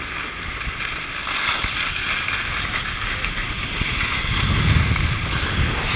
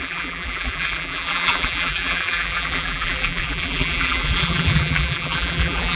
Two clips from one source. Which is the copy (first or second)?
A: second